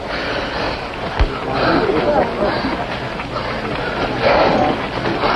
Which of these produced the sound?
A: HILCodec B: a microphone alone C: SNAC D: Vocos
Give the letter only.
B